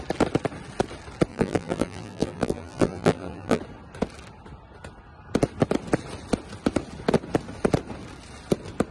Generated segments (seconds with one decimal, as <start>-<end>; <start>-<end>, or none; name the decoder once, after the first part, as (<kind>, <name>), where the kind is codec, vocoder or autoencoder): 1.3-3.6 (vocoder, BigVGAN v2)